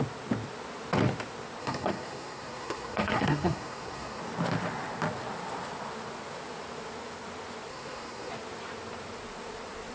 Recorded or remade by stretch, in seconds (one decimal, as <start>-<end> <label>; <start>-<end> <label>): 0.0-1.6 recorded; 1.6-4.2 remade; 4.2-7.7 recorded; 7.7-8.3 remade; 8.3-9.9 recorded